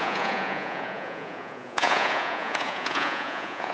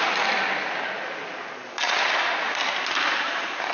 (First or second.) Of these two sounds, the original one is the second